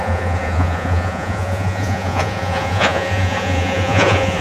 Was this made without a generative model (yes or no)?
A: no